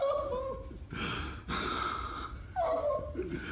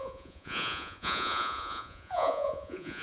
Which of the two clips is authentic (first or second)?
first